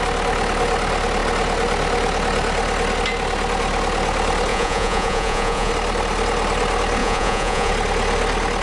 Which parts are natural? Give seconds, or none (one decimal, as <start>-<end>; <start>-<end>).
0.0-4.5; 5.7-7.0; 7.7-8.6